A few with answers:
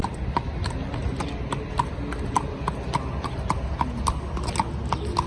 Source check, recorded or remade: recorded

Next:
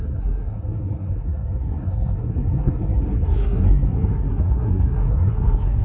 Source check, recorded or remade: remade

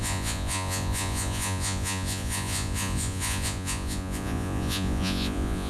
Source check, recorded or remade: remade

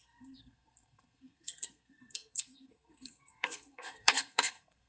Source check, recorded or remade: remade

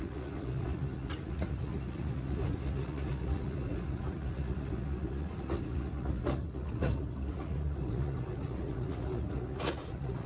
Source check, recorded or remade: remade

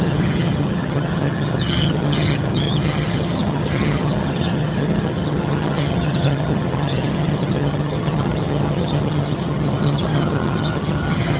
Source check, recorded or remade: remade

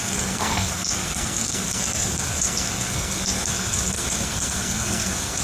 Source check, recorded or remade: remade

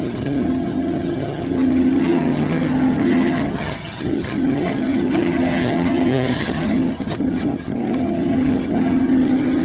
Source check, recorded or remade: remade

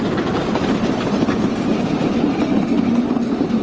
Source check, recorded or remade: recorded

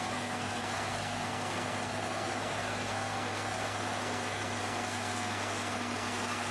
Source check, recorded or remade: remade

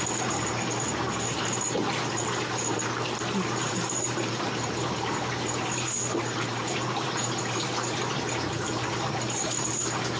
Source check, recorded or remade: remade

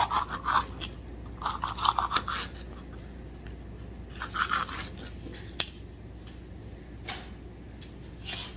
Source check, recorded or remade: recorded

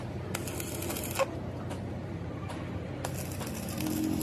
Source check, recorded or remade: recorded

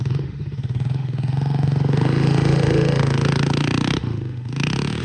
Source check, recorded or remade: remade